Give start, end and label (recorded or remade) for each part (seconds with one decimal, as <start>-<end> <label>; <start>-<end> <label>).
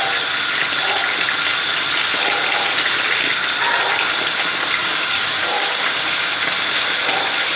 0.0-4.8 recorded; 4.8-6.3 remade; 6.3-7.6 recorded